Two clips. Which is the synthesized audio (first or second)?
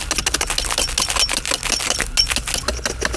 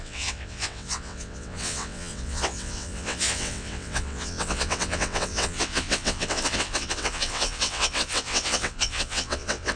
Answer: second